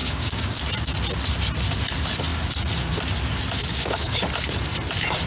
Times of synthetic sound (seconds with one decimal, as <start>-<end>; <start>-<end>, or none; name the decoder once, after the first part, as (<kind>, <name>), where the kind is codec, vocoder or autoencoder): 0.0-0.6 (codec, DAC); 3.6-4.2